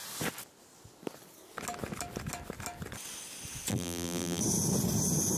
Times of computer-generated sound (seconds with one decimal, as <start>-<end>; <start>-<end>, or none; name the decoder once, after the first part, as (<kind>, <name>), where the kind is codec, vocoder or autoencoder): 3.7-4.4 (vocoder, BigVGAN v2)

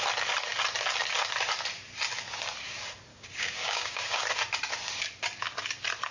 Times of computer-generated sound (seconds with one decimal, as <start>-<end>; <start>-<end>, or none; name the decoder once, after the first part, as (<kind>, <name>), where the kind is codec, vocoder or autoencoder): 3.1-4.2 (codec, DAC)

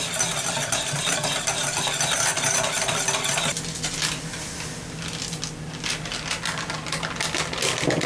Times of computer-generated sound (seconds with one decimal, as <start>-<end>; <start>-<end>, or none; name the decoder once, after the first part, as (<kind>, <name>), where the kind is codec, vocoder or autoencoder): none

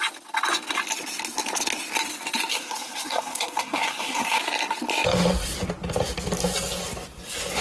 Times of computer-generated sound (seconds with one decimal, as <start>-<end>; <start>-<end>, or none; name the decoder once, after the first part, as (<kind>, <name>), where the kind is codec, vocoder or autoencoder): 2.5-4.4 (codec, SNAC)

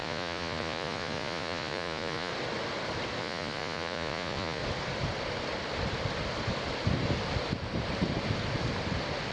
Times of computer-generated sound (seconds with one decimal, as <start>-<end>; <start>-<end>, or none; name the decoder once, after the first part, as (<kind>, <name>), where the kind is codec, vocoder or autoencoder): 0.0-2.3 (vocoder, Vocos); 3.2-4.6

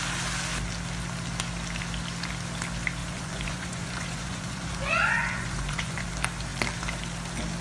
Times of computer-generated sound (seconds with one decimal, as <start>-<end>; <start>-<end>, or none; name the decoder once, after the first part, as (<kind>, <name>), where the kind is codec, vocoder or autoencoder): 3.0-6.1 (vocoder, Vocos)

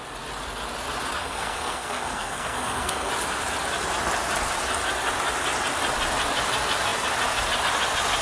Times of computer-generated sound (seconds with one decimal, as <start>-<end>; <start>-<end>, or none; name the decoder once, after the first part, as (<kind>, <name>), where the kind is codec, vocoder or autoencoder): 1.2-3.1 (codec, SNAC)

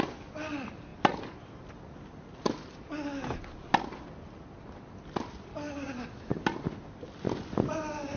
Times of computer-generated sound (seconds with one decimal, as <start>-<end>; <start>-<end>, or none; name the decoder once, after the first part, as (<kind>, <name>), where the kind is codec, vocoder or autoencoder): none